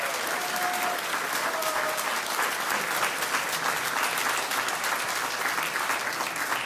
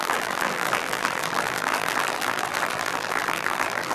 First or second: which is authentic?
first